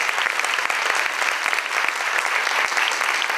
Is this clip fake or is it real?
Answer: real